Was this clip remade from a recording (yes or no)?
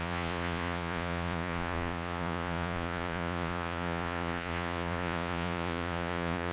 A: yes